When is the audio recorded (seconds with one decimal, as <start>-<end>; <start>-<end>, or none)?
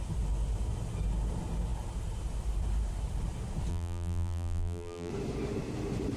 0.0-3.7; 5.1-6.2